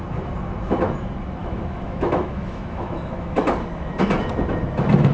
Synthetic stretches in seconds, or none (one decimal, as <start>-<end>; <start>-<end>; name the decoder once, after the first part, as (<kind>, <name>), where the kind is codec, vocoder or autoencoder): 1.4-3.4 (autoencoder, DAC-VAE)